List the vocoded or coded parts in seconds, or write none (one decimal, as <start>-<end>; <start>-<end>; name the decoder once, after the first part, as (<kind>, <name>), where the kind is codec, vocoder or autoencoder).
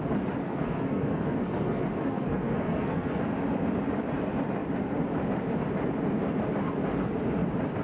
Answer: 0.4-3.2 (codec, SNAC)